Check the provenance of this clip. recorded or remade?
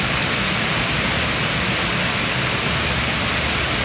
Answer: recorded